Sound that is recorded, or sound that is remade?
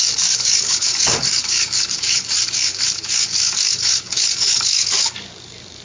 remade